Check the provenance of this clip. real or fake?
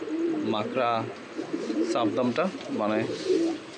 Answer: real